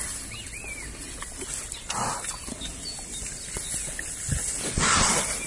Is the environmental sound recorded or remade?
recorded